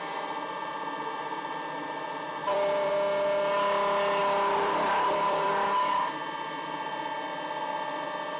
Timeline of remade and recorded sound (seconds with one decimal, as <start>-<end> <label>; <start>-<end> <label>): 0.0-2.4 recorded; 2.4-2.9 remade; 2.9-4.2 recorded; 4.2-5.5 remade; 5.5-8.4 recorded